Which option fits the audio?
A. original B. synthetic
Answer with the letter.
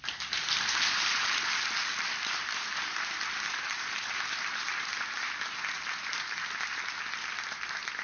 A